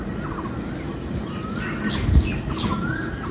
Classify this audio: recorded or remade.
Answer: recorded